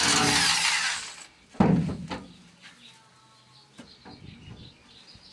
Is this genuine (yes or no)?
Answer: yes